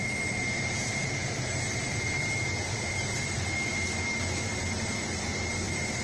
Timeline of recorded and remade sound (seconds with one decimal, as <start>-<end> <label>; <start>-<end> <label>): 0.0-6.0 remade